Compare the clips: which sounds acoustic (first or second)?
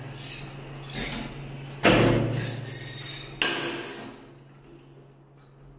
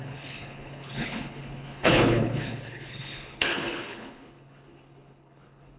first